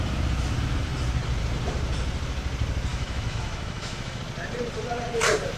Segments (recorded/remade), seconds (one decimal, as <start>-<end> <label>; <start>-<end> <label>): 0.0-2.9 recorded; 2.9-4.2 remade; 4.2-5.6 recorded